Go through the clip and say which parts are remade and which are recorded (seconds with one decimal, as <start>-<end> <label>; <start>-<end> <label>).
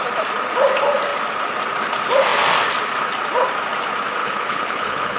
0.0-4.2 recorded; 4.2-5.2 remade